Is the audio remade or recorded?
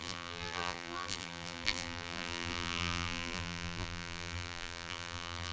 remade